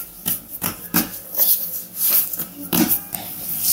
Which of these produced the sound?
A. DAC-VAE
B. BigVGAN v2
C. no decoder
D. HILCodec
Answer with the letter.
B